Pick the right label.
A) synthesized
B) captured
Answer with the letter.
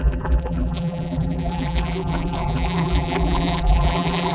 A